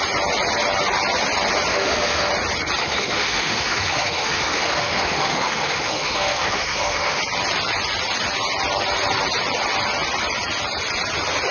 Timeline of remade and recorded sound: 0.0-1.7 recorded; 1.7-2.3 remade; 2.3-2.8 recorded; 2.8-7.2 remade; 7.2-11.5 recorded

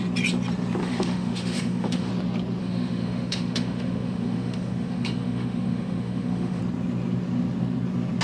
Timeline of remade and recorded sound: 0.0-0.8 recorded; 0.8-2.1 remade; 2.1-2.6 recorded; 2.6-6.6 remade; 6.6-8.2 recorded

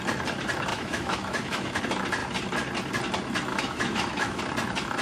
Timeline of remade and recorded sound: 0.0-0.7 recorded; 0.7-1.8 remade; 1.8-3.5 recorded; 3.5-4.4 remade; 4.4-5.0 recorded

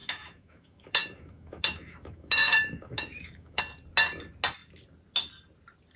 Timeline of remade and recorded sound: 0.0-3.6 remade; 3.6-6.0 recorded

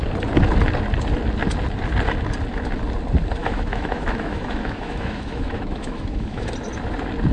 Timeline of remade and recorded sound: 0.0-3.4 recorded; 3.4-6.5 remade; 6.5-7.3 recorded

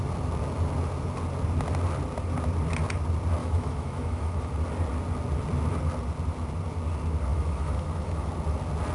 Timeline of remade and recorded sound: 0.0-3.4 recorded; 3.4-4.5 remade; 4.5-7.3 recorded; 7.3-8.3 remade; 8.3-8.9 recorded

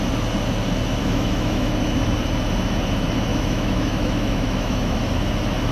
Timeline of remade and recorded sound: 0.0-1.0 recorded; 1.0-1.8 remade; 1.8-3.3 recorded; 3.3-5.0 remade; 5.0-5.7 recorded

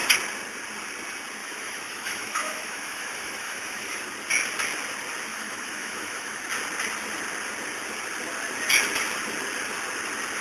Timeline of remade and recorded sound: 0.0-1.4 recorded; 1.4-4.0 remade; 4.0-5.3 recorded; 5.3-6.4 remade; 6.4-10.4 recorded